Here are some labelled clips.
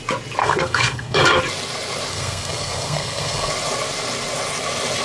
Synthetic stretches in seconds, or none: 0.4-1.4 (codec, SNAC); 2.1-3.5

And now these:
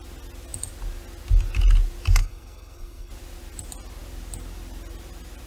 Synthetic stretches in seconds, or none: 2.2-3.1 (codec, SNAC)

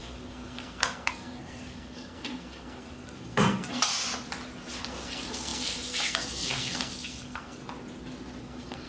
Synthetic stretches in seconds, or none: 0.0-3.9 (codec, SNAC); 4.8-7.6; 8.4-8.9

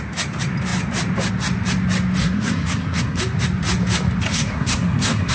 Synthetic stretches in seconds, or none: 2.2-3.2 (codec, SNAC); 4.3-5.3